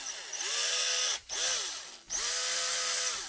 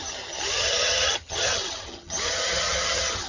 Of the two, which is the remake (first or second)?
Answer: second